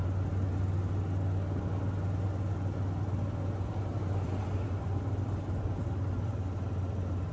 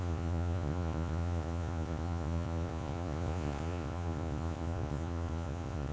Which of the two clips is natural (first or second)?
first